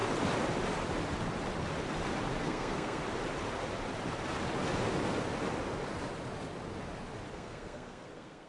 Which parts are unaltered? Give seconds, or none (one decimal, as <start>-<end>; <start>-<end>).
0.0-2.4; 3.0-7.3